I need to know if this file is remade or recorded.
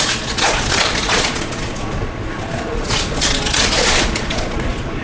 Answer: remade